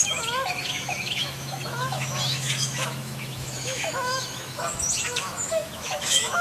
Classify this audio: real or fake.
fake